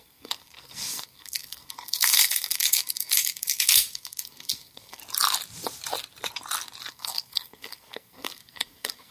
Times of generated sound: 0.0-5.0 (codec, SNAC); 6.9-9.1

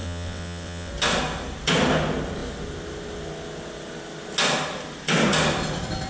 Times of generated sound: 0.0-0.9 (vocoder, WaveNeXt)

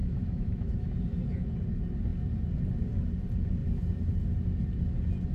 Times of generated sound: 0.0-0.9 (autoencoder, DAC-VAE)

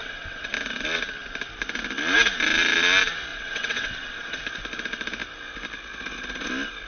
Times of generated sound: 0.0-0.5 (vocoder, WaveNeXt); 3.3-4.4

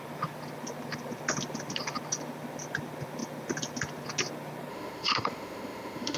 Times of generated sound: 4.7-6.2 (autoencoder, DAC-VAE)